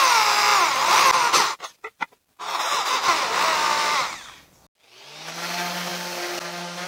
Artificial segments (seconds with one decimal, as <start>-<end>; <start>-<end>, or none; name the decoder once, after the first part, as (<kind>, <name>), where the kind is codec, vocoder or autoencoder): none